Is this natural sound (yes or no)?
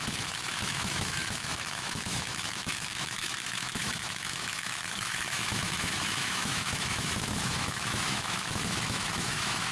no